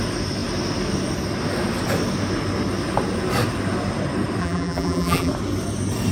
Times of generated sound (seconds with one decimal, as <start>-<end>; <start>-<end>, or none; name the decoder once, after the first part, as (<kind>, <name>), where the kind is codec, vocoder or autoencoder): 4.4-5.3 (vocoder, BigVGAN v2)